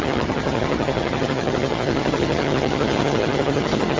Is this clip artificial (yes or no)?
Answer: yes